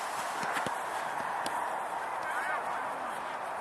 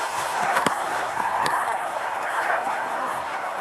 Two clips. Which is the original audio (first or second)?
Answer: first